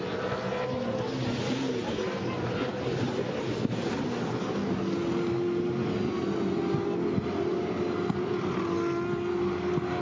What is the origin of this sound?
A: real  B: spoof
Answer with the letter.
A